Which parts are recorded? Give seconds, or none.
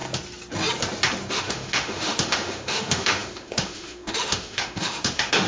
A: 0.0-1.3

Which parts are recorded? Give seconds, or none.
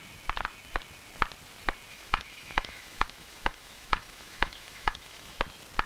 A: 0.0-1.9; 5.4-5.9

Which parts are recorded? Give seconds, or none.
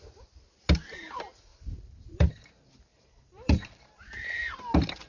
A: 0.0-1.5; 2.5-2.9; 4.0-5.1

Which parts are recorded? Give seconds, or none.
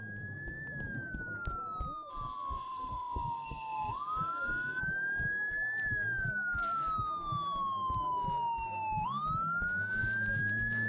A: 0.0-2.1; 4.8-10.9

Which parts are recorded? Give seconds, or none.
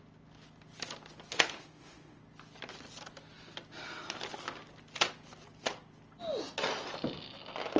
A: 0.0-1.3; 2.2-7.8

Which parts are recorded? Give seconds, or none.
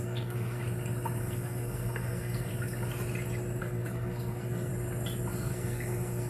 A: 0.6-1.2; 2.5-3.6; 4.7-5.3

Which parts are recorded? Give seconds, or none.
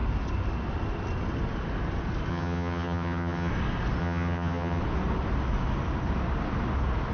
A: 0.0-2.3; 3.5-4.0; 4.8-7.1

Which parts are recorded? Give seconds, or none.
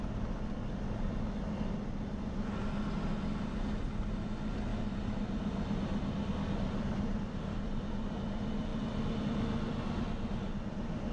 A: 0.0-11.1